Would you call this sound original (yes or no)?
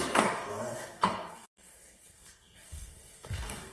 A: no